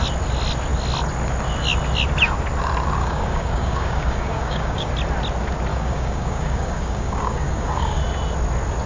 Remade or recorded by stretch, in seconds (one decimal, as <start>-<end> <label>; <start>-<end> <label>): 0.0-3.0 recorded; 3.0-4.9 remade; 4.9-5.7 recorded; 5.7-8.0 remade; 8.0-8.9 recorded